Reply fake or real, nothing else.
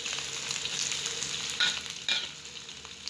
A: real